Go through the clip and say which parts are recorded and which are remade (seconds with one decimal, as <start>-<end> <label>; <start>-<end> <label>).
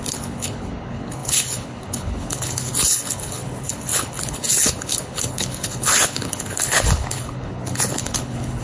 0.0-8.6 remade